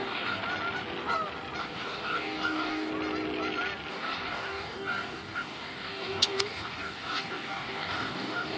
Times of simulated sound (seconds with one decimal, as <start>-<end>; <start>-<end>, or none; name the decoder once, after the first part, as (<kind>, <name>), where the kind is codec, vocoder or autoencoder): 0.0-0.4 (codec, DAC); 1.6-2.9; 3.9-8.6